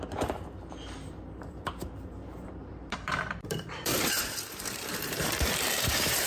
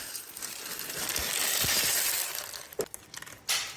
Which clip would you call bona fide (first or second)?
second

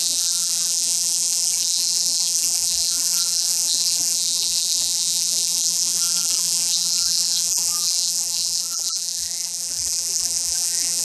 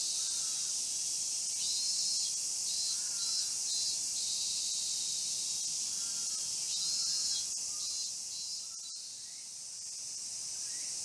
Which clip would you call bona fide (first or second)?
second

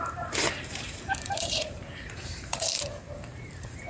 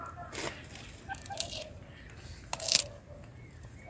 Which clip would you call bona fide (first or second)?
second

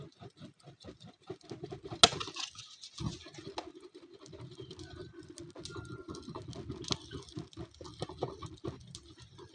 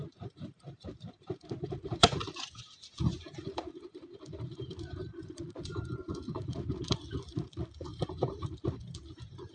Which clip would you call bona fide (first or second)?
first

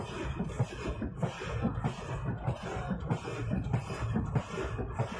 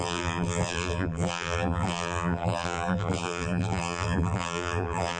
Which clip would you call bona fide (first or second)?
first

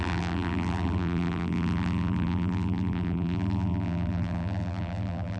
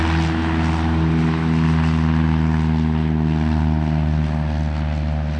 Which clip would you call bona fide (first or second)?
second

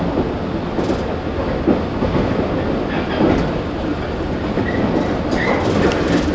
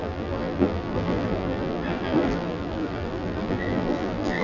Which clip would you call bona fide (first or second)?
first